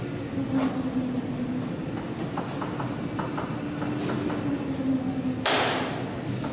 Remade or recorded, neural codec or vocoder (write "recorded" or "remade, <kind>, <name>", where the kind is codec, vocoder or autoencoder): recorded